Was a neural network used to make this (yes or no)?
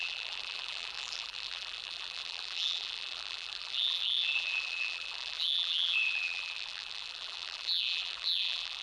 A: yes